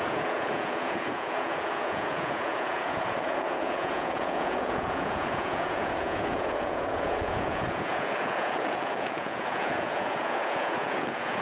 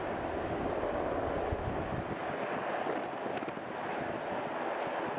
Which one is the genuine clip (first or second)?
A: second